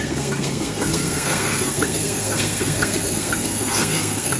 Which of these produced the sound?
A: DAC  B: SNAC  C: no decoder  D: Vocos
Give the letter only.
B